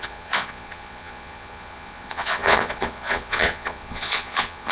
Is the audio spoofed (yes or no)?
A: yes